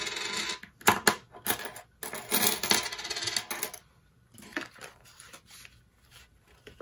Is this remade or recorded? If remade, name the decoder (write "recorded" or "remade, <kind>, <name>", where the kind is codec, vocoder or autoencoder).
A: recorded